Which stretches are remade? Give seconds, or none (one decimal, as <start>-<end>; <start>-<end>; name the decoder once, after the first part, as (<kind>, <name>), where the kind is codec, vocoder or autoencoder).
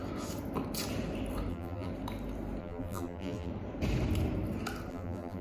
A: 1.5-1.9 (vocoder, BigVGAN v2); 2.6-3.5; 4.9-5.4